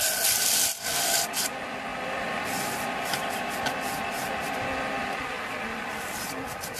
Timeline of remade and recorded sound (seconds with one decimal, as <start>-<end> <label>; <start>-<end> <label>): 0.0-6.8 recorded